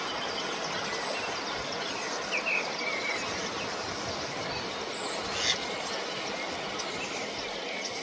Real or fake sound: real